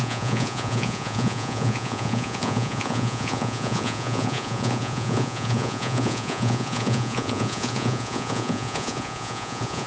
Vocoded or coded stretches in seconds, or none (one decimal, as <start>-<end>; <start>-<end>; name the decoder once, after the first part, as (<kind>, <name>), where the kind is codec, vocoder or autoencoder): 0.0-9.9 (vocoder, Vocos)